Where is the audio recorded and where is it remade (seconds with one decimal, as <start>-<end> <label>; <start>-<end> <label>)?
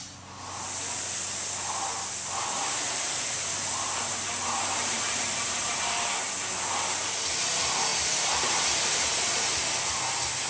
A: 0.0-2.6 recorded; 2.6-5.8 remade; 5.8-7.9 recorded; 7.9-9.8 remade; 9.8-10.5 recorded